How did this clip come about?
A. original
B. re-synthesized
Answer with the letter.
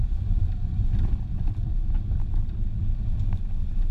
B